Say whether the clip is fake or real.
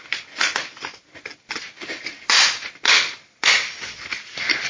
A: real